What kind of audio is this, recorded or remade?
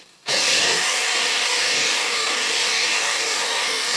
remade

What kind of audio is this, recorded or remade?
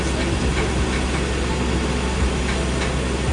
recorded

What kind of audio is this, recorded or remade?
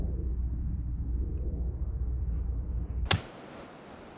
recorded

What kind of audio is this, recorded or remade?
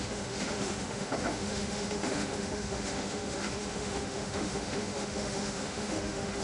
remade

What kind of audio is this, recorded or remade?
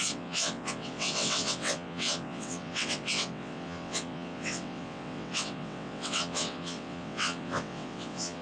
remade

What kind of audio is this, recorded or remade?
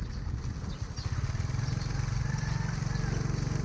recorded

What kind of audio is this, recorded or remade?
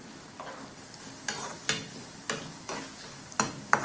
recorded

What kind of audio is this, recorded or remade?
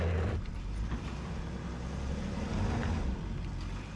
recorded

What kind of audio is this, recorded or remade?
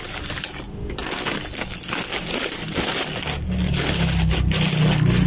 recorded